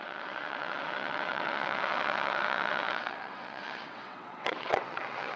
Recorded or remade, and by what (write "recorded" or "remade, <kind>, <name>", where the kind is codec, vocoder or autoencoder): remade, vocoder, WaveNeXt